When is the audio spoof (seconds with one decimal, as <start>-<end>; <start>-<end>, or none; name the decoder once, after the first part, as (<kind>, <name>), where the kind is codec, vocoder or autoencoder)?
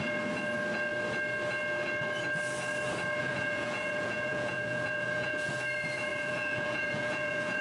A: 3.2-5.5 (vocoder, Vocos); 6.1-7.6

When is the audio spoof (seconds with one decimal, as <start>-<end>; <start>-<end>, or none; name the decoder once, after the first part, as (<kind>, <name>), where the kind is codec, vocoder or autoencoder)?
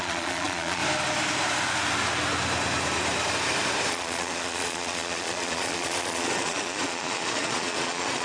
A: 0.0-0.8 (vocoder, Vocos); 3.9-8.2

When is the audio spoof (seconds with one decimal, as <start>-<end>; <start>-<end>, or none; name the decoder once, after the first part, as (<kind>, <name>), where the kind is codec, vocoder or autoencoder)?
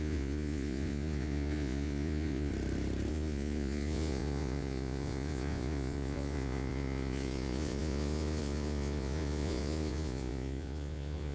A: 0.0-2.5 (vocoder, Vocos); 3.1-11.3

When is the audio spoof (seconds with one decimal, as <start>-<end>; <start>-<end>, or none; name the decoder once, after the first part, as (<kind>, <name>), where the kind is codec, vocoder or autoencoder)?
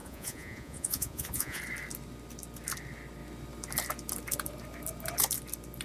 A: 0.0-1.6 (vocoder, Vocos)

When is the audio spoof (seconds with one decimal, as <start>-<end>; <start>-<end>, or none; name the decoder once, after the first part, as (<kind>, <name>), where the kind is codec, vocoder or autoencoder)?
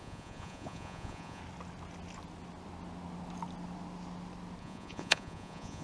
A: 0.0-1.4 (vocoder, Vocos); 4.6-5.8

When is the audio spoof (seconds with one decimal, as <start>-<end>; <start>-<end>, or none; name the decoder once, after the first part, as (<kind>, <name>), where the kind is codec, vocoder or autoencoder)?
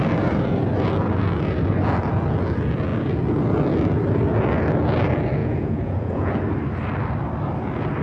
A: 5.4-6.3 (vocoder, Vocos)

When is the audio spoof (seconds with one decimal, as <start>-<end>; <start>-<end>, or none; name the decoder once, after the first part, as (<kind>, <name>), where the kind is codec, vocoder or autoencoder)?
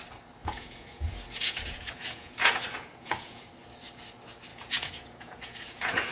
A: 0.4-3.5 (vocoder, Vocos); 4.5-6.1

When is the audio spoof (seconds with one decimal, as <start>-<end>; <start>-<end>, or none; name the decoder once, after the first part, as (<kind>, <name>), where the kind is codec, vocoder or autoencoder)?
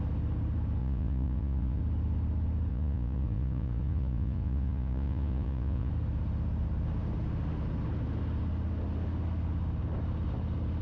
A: 0.8-1.8 (vocoder, Vocos); 2.7-5.9